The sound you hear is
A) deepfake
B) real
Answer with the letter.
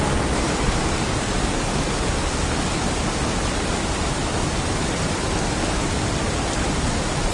B